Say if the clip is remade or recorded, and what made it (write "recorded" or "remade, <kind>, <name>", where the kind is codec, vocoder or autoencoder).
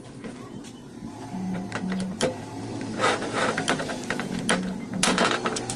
remade, vocoder, BigVGAN v2